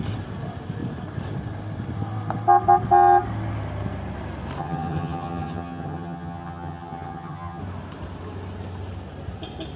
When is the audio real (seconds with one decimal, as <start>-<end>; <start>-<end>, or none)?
0.0-4.6; 7.6-9.8